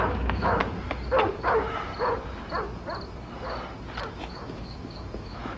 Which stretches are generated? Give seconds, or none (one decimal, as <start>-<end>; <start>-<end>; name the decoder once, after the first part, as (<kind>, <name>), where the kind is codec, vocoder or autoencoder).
0.0-0.6 (autoencoder, DAC-VAE); 1.3-1.9; 4.0-5.6